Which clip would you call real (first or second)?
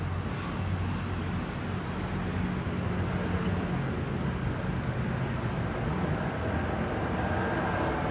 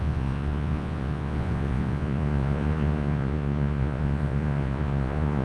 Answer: first